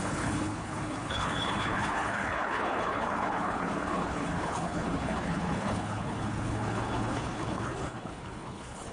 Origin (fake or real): fake